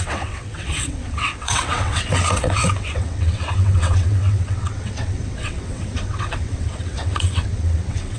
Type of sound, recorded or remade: remade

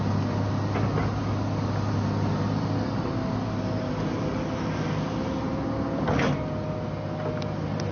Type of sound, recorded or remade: recorded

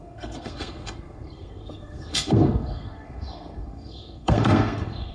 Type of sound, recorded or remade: remade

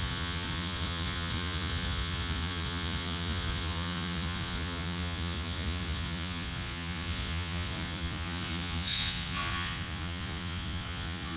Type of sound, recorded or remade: remade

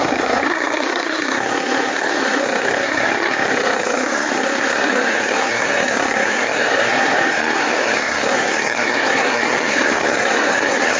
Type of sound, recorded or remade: remade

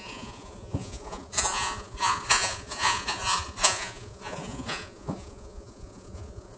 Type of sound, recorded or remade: remade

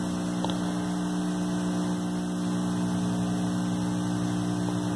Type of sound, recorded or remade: recorded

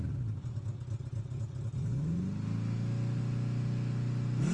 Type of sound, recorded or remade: recorded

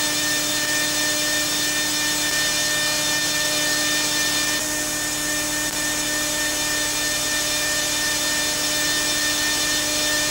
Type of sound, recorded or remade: recorded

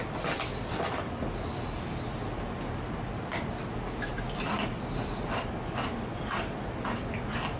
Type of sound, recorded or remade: recorded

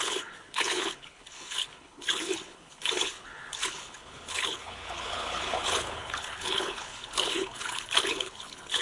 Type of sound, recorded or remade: remade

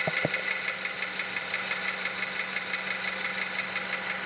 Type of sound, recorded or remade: recorded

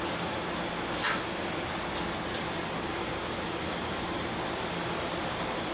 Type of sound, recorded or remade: recorded